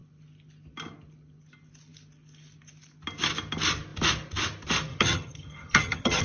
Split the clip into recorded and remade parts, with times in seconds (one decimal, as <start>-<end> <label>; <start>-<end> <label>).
0.0-4.9 recorded; 4.9-6.2 remade